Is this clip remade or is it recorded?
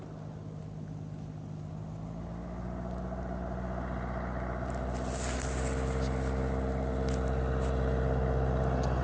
recorded